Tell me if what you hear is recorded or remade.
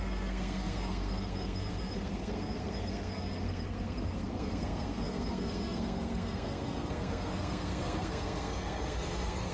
remade